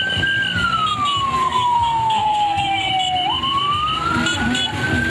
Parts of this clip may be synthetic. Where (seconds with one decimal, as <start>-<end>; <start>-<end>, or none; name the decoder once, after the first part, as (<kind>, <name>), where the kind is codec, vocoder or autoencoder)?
1.4-2.9 (codec, SNAC)